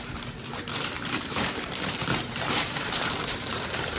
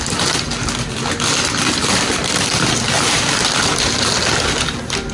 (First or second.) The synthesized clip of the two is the first